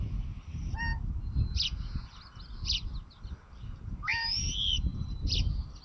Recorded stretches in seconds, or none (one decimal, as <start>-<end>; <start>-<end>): 0.0-4.9